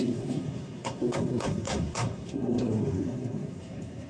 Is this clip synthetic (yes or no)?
yes